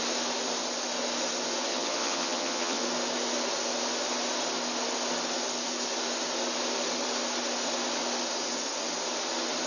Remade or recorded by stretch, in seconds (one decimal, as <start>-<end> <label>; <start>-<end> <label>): 0.0-1.7 recorded; 1.7-2.8 remade; 2.8-9.7 recorded